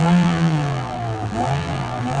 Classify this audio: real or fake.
fake